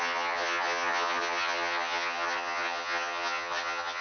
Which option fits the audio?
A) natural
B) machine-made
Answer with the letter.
B